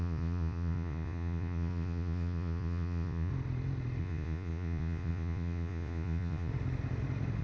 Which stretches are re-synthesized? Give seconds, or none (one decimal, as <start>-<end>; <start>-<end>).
0.0-3.3; 4.0-6.5